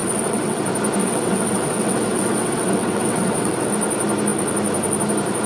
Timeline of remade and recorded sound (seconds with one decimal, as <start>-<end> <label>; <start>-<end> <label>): 0.0-0.6 remade; 0.6-1.0 recorded; 1.0-3.7 remade; 3.7-5.5 recorded